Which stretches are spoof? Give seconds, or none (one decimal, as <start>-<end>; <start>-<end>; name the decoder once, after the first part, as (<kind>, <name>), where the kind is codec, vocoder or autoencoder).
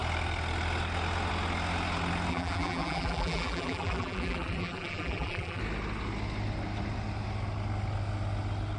2.3-5.6 (vocoder, BigVGAN v2)